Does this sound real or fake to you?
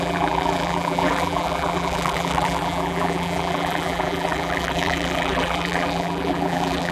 fake